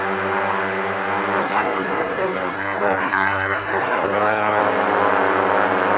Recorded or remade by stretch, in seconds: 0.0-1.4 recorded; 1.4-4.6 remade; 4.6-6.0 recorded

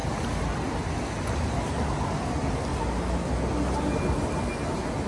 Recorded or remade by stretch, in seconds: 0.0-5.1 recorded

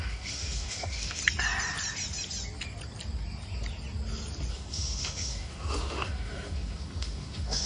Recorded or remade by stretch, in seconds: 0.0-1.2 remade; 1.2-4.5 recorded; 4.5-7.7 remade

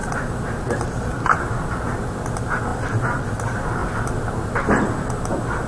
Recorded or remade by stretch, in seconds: 0.0-1.4 remade; 1.4-3.8 recorded; 3.8-4.3 remade; 4.3-5.7 recorded

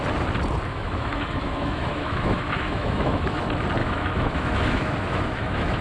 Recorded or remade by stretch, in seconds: 0.0-0.7 recorded; 0.7-3.4 remade; 3.4-3.8 recorded; 3.8-5.8 remade

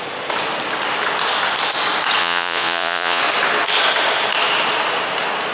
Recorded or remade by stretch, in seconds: 0.0-2.2 recorded; 2.2-3.2 remade; 3.2-5.5 recorded